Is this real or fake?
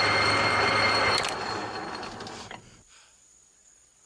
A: real